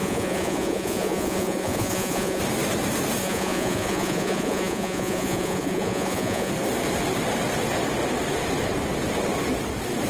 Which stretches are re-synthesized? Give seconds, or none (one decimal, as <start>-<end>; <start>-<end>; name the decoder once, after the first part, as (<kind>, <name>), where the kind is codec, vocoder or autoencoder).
0.0-2.4 (vocoder, Vocos); 3.2-6.5